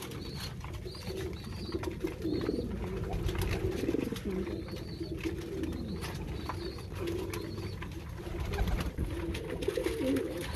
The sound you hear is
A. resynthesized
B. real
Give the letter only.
B